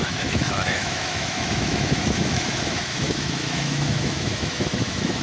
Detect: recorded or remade remade